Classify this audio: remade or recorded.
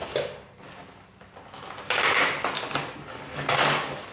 recorded